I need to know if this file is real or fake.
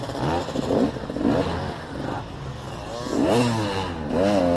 real